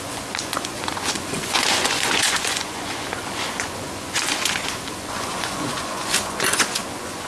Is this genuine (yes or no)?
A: no